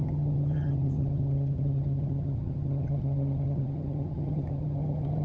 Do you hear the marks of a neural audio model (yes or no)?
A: yes